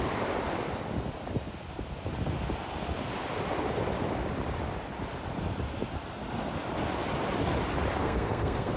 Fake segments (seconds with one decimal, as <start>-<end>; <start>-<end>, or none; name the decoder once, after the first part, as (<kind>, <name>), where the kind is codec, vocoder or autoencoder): 8.0-8.8 (codec, SNAC)